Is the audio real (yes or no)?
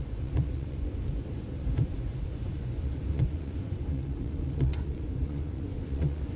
no